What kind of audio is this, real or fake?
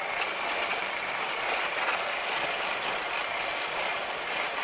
real